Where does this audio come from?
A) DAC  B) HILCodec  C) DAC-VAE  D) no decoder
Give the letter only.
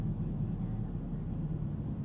D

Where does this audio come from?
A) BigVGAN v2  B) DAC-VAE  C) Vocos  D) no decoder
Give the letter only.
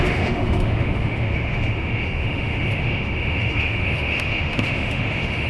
B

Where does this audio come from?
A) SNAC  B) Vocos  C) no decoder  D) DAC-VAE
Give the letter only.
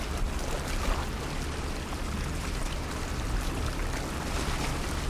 C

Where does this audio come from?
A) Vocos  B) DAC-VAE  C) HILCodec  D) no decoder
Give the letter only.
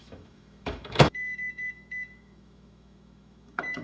B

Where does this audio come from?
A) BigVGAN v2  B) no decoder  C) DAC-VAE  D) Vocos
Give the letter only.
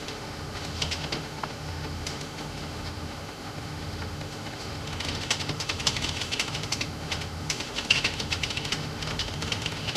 C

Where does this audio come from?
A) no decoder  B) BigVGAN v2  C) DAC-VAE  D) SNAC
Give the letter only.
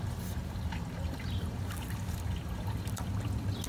A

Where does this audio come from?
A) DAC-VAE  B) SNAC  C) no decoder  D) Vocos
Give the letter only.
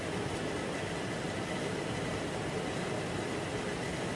C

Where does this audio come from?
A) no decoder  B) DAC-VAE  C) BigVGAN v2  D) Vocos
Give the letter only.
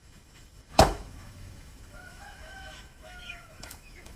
B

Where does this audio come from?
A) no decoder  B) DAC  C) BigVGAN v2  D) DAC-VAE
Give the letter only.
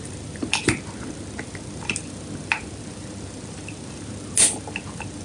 A